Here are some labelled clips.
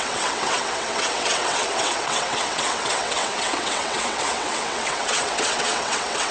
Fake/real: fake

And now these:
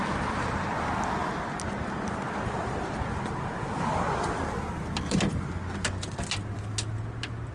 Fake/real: real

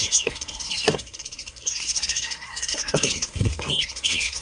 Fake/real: fake